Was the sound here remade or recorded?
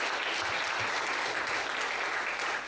recorded